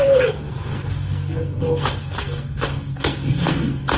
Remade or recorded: remade